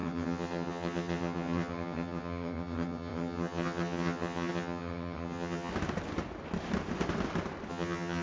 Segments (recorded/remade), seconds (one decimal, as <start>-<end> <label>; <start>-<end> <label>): 0.0-5.7 remade; 5.7-7.7 recorded; 7.7-8.2 remade